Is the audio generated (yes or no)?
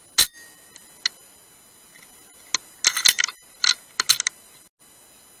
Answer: no